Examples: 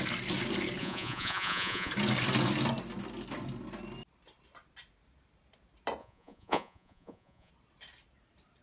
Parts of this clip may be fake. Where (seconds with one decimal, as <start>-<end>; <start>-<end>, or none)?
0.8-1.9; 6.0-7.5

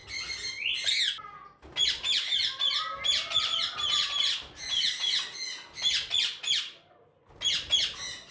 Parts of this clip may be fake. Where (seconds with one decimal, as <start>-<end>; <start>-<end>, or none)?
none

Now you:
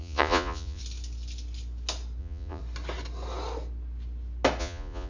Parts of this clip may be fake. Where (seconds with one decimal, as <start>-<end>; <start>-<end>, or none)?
0.0-0.8; 2.2-2.6; 4.6-5.1

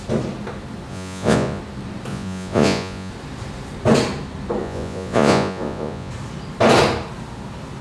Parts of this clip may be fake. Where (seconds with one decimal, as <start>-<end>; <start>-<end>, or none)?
0.9-1.6; 2.1-3.1; 4.6-6.1

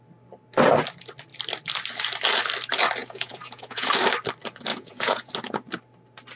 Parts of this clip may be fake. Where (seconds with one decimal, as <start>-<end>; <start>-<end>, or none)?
3.0-3.9; 4.7-5.3

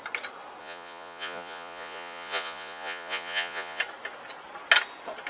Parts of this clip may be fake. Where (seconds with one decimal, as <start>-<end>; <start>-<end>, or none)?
0.6-3.8

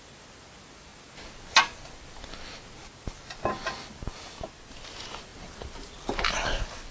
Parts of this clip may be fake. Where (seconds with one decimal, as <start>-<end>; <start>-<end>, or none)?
none